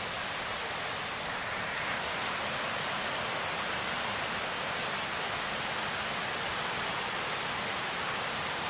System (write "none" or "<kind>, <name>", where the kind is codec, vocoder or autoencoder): none